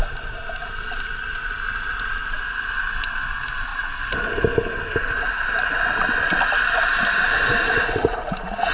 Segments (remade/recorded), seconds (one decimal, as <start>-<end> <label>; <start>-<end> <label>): 0.0-8.0 recorded; 8.0-8.7 remade